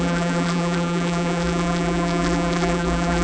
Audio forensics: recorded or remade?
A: remade